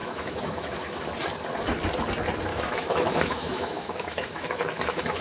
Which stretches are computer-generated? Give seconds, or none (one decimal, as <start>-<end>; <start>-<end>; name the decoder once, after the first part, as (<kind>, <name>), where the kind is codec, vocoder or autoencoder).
0.0-1.0 (autoencoder, DAC-VAE); 2.5-5.2